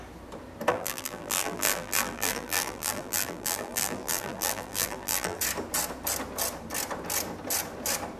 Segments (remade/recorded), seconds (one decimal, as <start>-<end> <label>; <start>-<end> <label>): 0.0-0.7 recorded; 0.7-5.4 remade; 5.4-8.2 recorded